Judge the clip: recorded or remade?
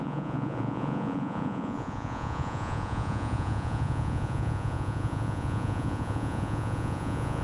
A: remade